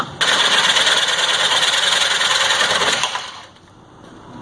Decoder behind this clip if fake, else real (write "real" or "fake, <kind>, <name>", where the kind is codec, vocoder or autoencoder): real